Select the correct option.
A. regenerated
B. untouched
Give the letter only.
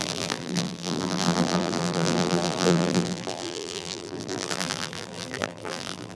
A